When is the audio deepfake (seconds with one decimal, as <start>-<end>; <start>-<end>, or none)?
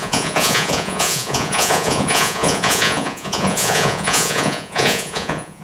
0.0-5.6